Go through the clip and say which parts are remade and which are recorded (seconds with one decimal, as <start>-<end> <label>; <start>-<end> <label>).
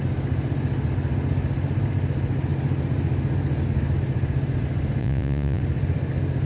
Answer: 0.0-5.0 recorded; 5.0-5.6 remade; 5.6-6.5 recorded